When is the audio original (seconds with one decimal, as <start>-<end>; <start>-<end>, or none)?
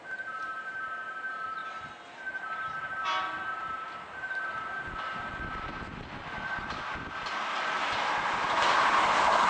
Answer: 0.0-9.5